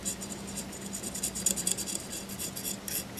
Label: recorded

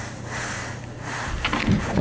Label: recorded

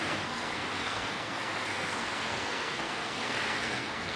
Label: remade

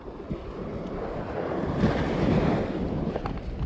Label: recorded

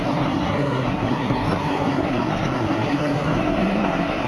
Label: remade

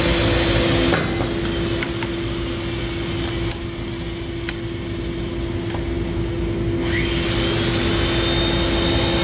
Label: recorded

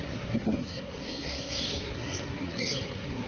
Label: remade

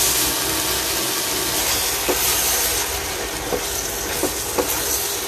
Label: recorded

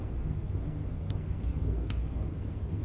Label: remade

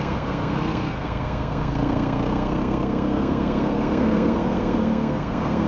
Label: remade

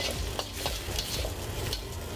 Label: recorded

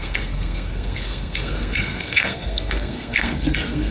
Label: remade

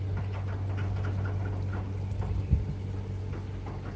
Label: recorded